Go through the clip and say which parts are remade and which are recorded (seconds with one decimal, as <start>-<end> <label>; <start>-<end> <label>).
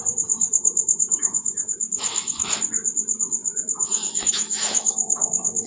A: 0.0-0.5 recorded; 0.5-2.6 remade; 2.6-3.4 recorded; 3.4-5.7 remade